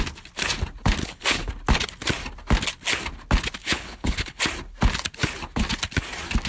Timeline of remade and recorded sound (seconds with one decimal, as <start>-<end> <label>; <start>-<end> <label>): 0.0-1.0 recorded; 1.0-1.5 remade; 1.5-3.6 recorded; 3.6-4.4 remade; 4.4-6.5 recorded